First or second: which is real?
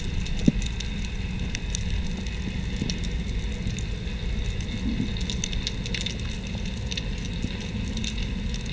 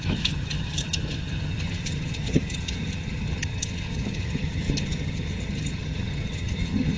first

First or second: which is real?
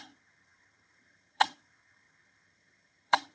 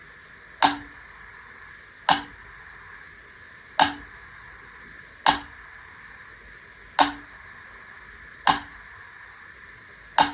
second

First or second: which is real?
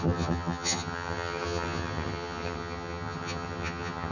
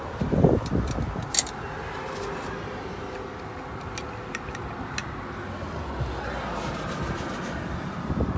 second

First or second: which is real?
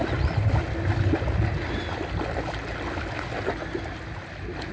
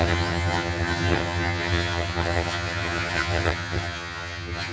first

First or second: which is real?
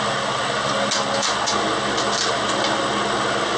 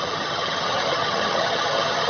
first